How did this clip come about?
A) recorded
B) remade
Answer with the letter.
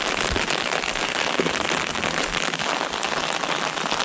A